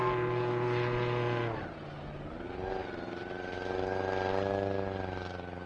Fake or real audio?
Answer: real